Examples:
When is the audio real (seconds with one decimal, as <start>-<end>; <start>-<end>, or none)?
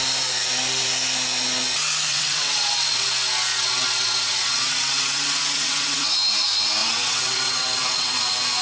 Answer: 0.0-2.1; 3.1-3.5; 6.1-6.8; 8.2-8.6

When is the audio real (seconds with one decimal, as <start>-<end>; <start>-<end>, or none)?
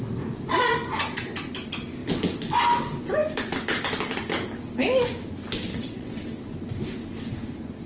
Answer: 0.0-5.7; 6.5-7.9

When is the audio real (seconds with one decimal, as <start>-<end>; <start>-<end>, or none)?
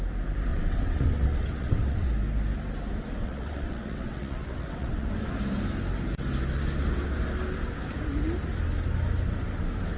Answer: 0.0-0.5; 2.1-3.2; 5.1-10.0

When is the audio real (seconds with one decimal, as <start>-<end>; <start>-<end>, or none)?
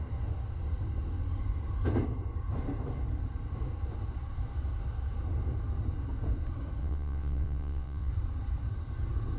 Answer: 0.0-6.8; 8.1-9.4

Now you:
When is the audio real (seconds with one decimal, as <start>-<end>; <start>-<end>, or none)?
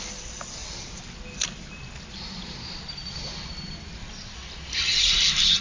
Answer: 0.0-4.0; 4.5-5.6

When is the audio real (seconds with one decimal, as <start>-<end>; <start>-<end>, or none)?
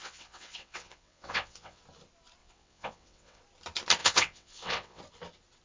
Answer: 1.8-2.4; 3.4-4.0; 5.0-5.6